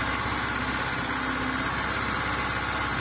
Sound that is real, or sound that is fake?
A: real